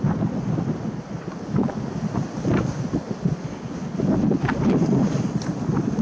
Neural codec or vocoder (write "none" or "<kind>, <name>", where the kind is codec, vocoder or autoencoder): none